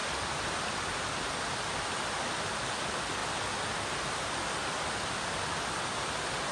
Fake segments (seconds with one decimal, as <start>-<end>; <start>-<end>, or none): none